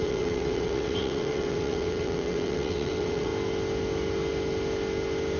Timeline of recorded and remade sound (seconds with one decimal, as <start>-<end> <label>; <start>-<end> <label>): 0.0-3.3 remade; 3.3-5.4 recorded